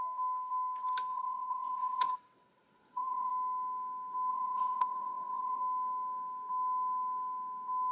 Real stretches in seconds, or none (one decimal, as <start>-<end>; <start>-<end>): 0.0-1.1; 3.3-4.3; 5.6-7.9